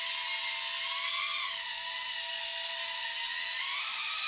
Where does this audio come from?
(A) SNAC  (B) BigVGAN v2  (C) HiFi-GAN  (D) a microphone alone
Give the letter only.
D